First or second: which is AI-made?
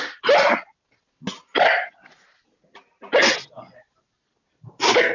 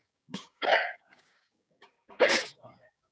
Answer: second